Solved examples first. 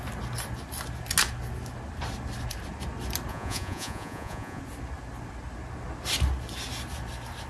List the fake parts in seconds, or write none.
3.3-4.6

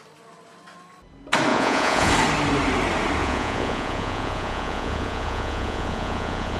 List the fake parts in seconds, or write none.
1.5-2.1; 3.2-6.6

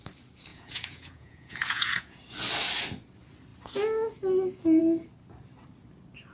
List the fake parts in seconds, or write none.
0.5-2.2

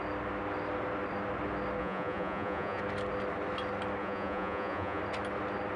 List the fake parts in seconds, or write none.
1.8-2.8; 4.0-5.0